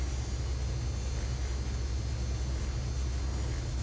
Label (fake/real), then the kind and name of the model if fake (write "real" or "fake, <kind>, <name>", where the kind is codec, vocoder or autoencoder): real